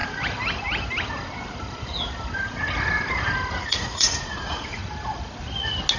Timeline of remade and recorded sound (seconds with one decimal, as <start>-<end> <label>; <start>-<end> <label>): 0.0-3.6 recorded; 3.6-4.8 remade; 4.8-6.0 recorded